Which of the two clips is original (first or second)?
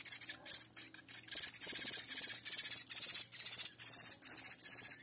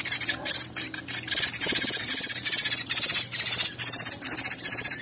first